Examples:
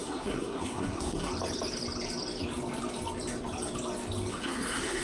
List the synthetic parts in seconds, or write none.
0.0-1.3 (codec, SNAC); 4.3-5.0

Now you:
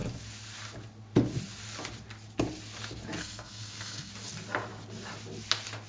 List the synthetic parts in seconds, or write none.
3.2-4.1 (codec, SNAC)